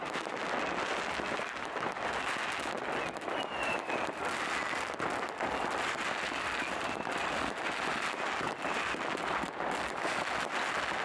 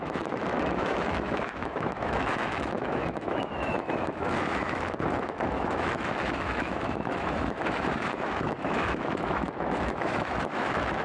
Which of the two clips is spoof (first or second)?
second